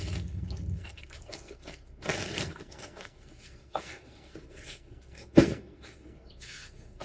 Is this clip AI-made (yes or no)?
yes